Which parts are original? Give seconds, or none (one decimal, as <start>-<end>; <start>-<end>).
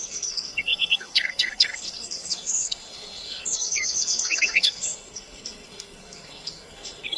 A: none